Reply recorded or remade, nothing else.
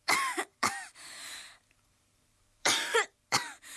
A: remade